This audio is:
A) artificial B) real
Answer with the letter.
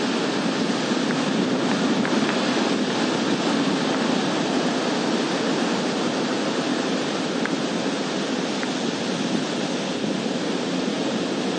B